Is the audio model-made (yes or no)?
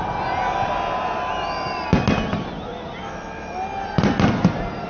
no